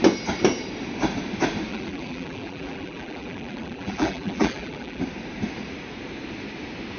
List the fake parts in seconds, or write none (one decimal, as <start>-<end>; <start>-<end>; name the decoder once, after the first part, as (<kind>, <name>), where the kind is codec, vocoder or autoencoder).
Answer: 1.7-5.0 (vocoder, BigVGAN v2)